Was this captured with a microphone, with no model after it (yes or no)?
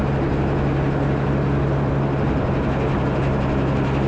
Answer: yes